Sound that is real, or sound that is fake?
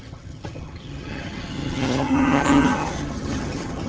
fake